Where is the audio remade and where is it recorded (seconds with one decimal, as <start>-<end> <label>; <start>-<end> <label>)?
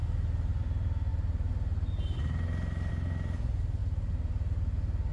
0.0-5.1 recorded